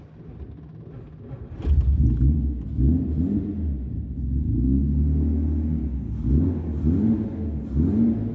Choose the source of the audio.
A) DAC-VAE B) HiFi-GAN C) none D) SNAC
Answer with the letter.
C